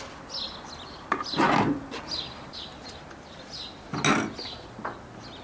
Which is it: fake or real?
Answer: real